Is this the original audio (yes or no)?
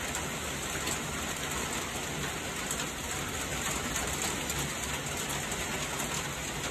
yes